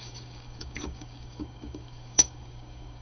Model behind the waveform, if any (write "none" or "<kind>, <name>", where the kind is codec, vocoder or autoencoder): codec, DAC